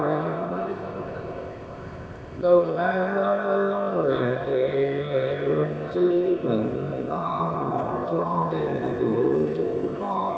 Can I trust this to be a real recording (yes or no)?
no